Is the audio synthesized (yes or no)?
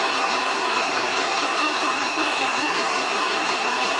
yes